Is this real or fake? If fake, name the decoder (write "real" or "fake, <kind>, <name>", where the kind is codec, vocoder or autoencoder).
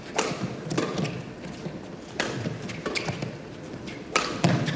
fake, vocoder, BigVGAN v2